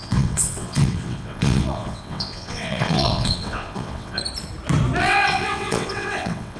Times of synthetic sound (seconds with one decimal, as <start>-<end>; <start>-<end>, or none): 0.0-4.2; 5.0-6.6